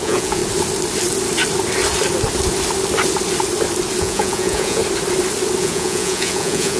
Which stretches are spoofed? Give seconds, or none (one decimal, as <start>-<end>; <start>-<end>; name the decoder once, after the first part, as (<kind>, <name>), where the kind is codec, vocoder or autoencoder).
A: 0.0-0.4 (vocoder, Vocos); 4.0-4.8; 5.6-6.8